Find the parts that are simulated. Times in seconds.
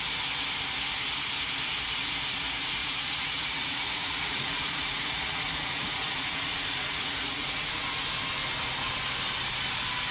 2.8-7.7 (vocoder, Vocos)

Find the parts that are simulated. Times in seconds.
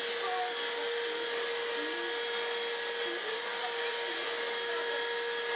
none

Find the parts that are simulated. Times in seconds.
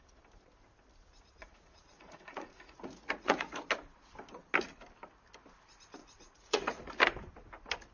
1.4-3.6 (vocoder, Vocos); 6.0-6.9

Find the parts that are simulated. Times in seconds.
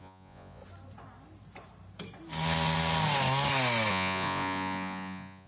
0.0-0.6 (vocoder, Vocos); 3.9-5.5